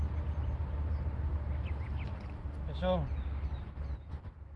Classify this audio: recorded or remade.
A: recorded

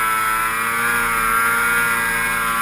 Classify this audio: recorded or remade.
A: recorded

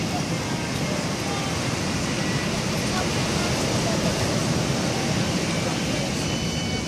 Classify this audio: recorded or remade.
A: recorded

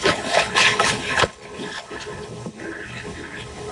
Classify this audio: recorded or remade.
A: remade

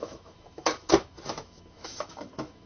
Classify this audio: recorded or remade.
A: remade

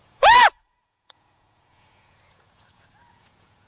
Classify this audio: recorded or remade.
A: remade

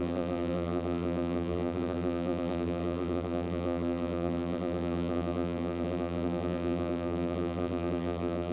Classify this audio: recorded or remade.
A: remade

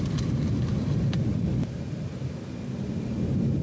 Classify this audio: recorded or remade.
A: recorded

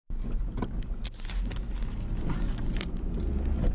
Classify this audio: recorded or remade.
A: recorded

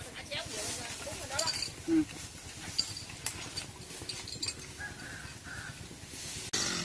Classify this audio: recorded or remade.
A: recorded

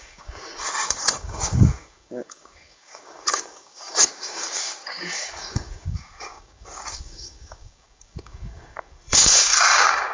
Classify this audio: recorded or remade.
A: remade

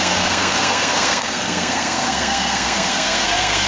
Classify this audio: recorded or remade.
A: remade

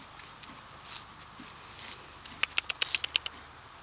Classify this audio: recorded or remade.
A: recorded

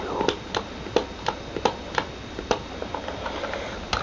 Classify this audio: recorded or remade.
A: recorded